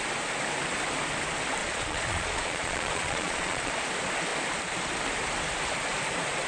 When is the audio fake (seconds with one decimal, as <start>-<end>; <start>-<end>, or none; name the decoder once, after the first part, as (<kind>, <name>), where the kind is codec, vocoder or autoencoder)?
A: 1.6-3.7 (vocoder, Vocos)